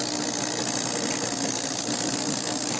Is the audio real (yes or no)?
yes